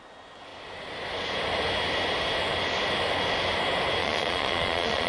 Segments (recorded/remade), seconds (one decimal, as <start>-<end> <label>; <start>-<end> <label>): 0.0-4.0 recorded; 4.0-5.1 remade